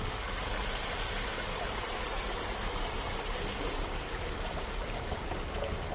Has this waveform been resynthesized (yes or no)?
yes